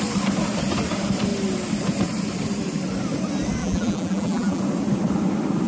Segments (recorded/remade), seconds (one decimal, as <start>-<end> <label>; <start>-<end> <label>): 0.0-3.6 recorded; 3.6-4.6 remade; 4.6-5.7 recorded